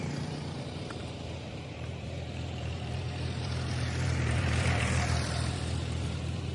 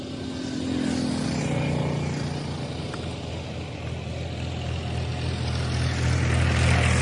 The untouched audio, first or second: second